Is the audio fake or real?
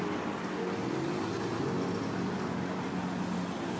real